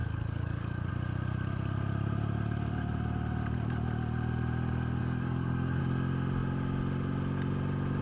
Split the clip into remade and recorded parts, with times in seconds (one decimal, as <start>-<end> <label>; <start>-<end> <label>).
0.0-0.9 remade; 0.9-5.0 recorded; 5.0-5.8 remade; 5.8-8.0 recorded